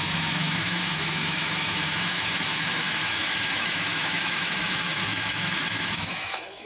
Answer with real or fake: fake